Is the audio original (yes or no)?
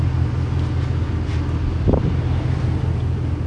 yes